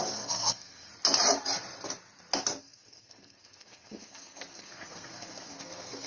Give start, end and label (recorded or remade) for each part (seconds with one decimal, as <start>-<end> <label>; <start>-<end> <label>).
0.0-0.9 remade; 0.9-2.6 recorded; 2.6-6.1 remade